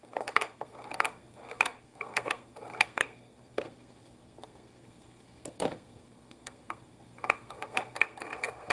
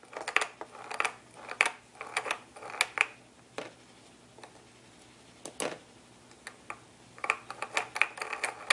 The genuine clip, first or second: second